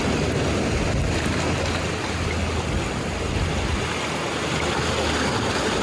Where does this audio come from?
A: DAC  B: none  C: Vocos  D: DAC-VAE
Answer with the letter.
B